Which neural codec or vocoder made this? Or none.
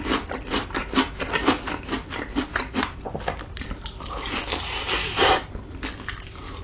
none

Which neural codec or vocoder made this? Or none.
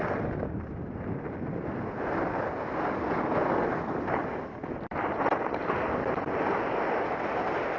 none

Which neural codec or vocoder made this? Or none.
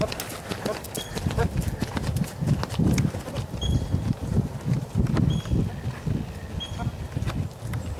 none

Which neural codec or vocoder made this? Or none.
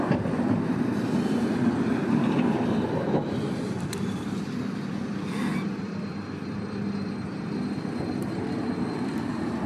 vocoder, BigVGAN v2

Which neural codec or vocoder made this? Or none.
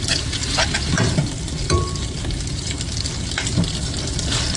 none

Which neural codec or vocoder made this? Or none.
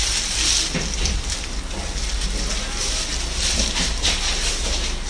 none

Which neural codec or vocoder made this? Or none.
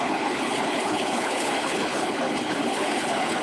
codec, HILCodec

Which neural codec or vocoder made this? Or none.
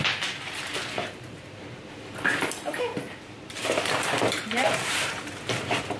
vocoder, BigVGAN v2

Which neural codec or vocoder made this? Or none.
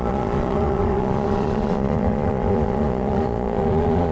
vocoder, Vocos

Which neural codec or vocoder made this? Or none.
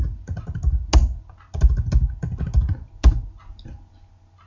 none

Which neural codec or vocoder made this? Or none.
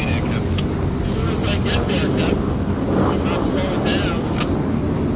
none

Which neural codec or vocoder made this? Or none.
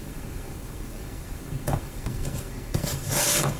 codec, SNAC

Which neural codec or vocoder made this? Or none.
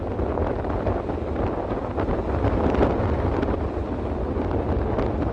none